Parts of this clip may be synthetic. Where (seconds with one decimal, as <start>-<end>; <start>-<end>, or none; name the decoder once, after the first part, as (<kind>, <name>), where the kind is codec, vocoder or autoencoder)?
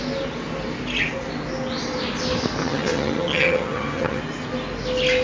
2.6-4.2 (vocoder, HiFi-GAN)